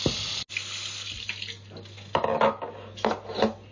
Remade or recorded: recorded